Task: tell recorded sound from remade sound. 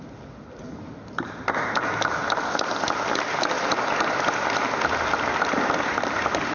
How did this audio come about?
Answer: recorded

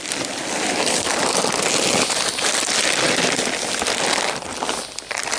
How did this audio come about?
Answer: recorded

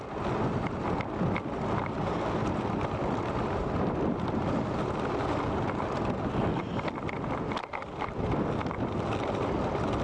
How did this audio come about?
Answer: recorded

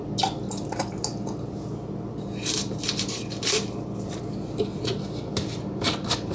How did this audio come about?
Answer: recorded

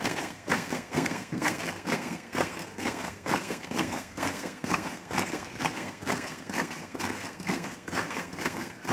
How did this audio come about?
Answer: remade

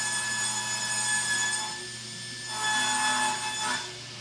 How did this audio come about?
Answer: recorded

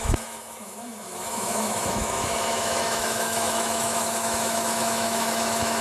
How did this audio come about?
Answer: remade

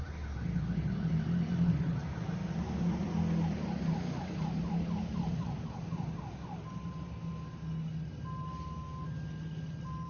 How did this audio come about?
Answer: recorded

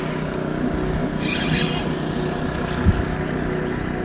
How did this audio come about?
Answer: recorded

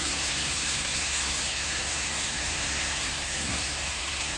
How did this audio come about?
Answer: remade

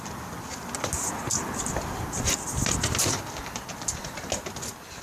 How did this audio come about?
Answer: recorded